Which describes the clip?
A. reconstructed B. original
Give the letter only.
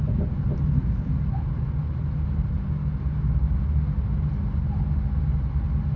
B